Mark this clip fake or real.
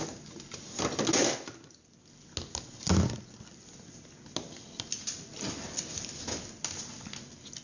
real